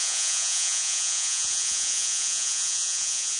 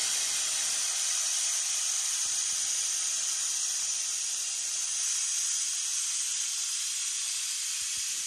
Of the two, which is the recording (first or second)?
second